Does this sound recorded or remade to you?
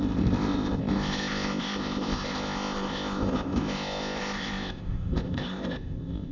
remade